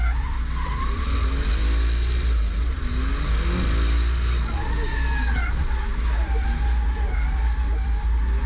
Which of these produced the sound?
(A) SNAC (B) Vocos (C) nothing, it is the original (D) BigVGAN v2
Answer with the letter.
C